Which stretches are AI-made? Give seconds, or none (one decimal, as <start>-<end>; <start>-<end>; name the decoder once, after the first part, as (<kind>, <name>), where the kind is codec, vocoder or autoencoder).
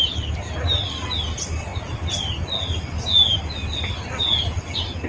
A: none